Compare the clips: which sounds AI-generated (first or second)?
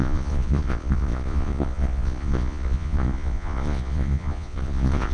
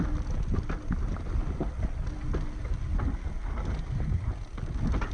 first